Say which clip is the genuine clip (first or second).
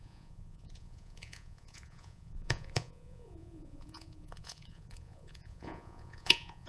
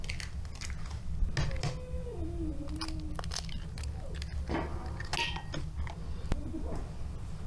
second